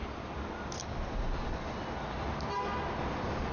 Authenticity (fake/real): real